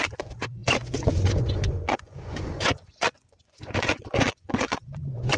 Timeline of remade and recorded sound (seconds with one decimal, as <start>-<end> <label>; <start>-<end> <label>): 0.0-5.4 remade